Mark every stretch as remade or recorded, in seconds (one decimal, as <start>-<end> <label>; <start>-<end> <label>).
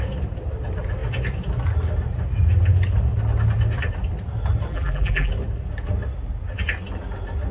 0.0-4.7 recorded; 4.7-5.3 remade; 5.3-7.5 recorded